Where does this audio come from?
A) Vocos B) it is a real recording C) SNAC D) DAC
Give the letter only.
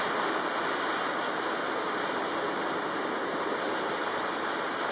B